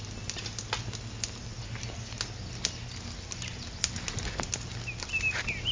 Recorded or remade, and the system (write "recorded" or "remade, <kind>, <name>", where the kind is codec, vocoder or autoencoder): recorded